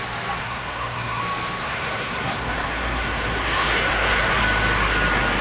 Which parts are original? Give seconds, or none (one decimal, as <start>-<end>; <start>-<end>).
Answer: 0.0-0.4; 1.2-1.6; 4.4-5.4